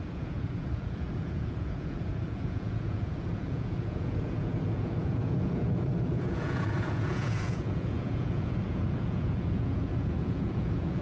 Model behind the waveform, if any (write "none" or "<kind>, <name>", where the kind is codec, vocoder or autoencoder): vocoder, Vocos